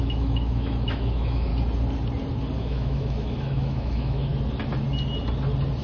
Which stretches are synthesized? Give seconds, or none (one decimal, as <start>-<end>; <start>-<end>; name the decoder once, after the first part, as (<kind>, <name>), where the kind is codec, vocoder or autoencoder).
0.0-1.5 (autoencoder, DAC-VAE); 2.6-4.3